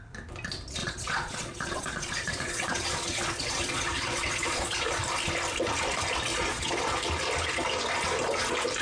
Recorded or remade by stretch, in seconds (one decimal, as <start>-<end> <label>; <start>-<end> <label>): 0.0-0.8 recorded; 0.8-5.0 remade; 5.0-6.3 recorded; 6.3-6.8 remade; 6.8-8.8 recorded